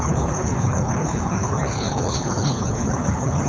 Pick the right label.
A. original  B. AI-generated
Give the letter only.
B